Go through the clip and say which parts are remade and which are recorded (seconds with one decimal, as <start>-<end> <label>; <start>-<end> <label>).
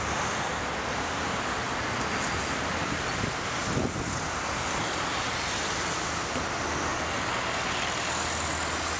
0.0-3.6 remade; 3.6-4.2 recorded; 4.2-6.9 remade; 6.9-9.0 recorded